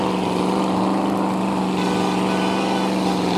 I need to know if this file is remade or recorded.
recorded